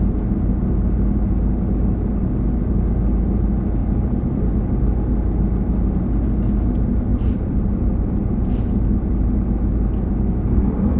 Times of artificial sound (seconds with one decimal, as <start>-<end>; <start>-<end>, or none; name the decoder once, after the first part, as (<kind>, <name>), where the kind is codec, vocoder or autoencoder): 3.8-4.8 (vocoder, BigVGAN v2); 7.1-8.5